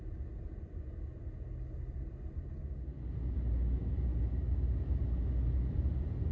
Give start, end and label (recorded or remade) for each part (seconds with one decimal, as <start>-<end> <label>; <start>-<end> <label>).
0.0-6.3 recorded